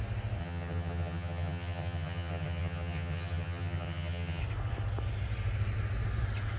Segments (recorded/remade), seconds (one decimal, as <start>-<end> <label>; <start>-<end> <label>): 0.0-0.4 recorded; 0.4-4.4 remade; 4.4-6.6 recorded